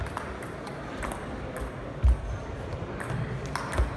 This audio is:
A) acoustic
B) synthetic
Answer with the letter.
A